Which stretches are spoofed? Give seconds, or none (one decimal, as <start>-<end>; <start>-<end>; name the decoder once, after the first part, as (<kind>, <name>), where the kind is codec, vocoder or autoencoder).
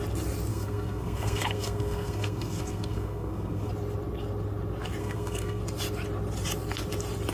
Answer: 0.5-3.7 (codec, SNAC); 5.0-5.6